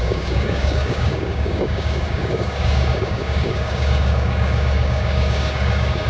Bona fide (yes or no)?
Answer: no